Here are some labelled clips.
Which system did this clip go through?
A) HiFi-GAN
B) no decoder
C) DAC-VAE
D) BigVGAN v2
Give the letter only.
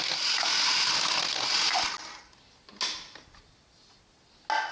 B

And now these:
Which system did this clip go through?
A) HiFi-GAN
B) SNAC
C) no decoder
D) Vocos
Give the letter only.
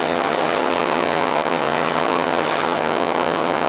A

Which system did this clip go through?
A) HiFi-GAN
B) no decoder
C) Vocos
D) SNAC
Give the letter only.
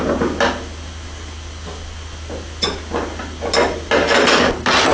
B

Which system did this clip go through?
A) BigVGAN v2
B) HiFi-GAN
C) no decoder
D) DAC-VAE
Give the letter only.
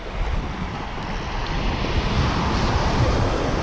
C